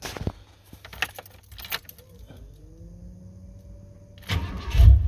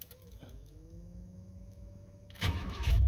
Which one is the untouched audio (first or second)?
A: first